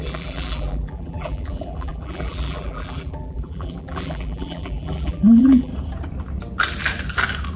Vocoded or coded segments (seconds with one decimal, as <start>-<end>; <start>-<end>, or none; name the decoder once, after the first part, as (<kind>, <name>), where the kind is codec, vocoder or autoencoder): 0.0-5.7 (vocoder, BigVGAN v2)